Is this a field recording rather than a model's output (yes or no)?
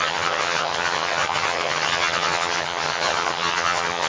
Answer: no